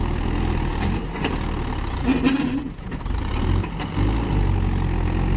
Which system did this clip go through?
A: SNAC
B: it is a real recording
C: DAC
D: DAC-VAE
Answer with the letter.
B